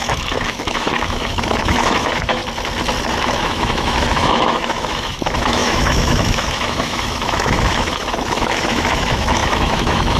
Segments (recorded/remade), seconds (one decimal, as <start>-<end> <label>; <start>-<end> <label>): 0.0-2.4 remade; 2.4-3.2 recorded; 3.2-10.2 remade